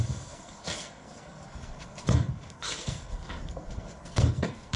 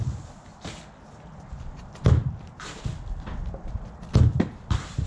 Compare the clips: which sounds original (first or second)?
second